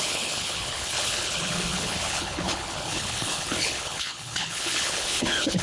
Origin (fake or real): fake